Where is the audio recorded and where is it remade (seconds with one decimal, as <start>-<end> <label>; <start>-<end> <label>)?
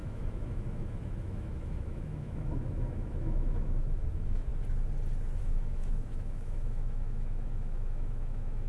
0.0-4.5 remade; 4.5-5.4 recorded; 5.4-8.7 remade